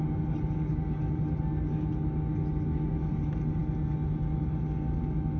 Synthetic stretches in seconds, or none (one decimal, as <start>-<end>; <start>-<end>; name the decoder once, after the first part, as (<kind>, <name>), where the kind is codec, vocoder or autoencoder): none